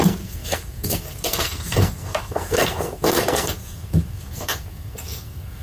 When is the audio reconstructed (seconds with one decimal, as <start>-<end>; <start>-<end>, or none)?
0.0-5.6